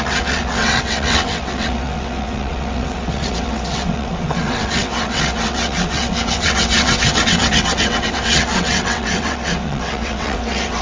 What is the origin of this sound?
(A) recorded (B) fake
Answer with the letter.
B